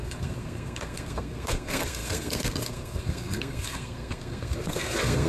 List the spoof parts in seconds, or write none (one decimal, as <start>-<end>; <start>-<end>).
0.0-5.3